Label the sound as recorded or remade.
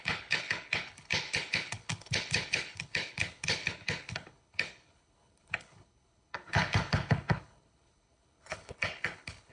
remade